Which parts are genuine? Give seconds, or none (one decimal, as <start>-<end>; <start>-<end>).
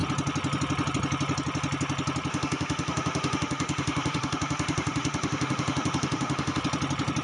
0.0-2.3; 6.6-7.2